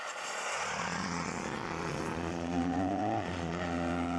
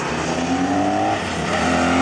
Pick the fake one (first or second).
first